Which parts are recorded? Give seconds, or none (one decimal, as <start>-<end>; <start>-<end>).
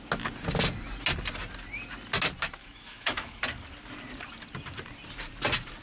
0.0-2.6; 3.4-5.8